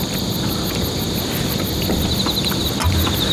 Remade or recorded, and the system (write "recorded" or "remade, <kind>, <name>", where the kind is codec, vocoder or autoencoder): recorded